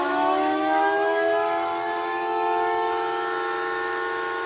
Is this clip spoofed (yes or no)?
yes